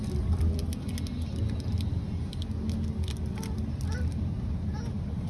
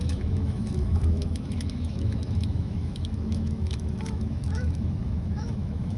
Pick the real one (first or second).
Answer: first